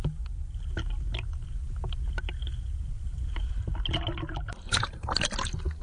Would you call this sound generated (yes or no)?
no